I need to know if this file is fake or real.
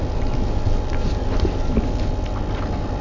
real